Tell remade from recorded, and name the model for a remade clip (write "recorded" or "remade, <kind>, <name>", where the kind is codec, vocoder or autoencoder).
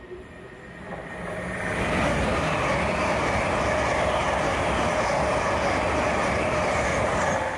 recorded